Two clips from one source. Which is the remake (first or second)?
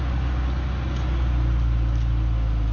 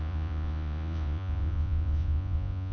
second